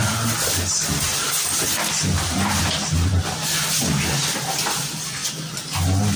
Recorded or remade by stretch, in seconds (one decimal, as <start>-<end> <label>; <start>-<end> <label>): 0.0-6.2 recorded